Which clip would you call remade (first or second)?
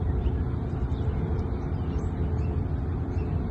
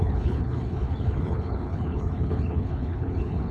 second